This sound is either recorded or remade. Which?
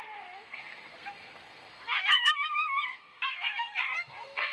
remade